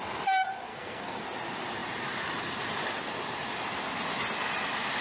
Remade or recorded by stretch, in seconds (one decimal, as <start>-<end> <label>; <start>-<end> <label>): 0.0-0.7 recorded; 0.7-1.2 remade; 1.2-5.0 recorded